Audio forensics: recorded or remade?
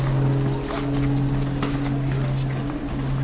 recorded